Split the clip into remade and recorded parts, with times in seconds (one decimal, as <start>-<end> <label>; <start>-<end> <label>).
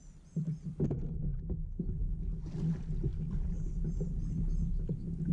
0.0-5.3 recorded